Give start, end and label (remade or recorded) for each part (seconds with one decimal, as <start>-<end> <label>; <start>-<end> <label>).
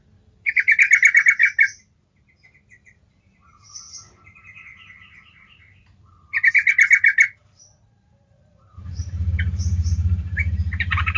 0.0-7.4 recorded; 7.4-11.2 remade